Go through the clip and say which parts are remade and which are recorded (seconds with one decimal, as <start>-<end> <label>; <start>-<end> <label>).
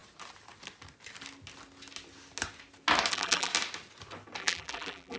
0.0-3.1 recorded; 3.1-3.5 remade; 3.5-4.4 recorded; 4.4-5.2 remade